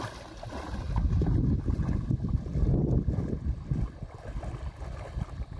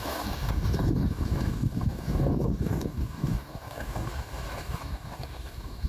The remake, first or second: second